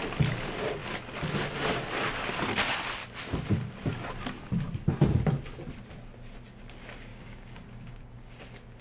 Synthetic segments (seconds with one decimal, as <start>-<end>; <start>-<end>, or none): 7.1-8.4